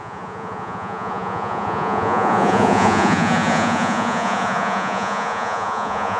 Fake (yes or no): yes